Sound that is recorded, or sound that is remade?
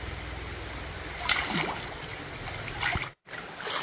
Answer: recorded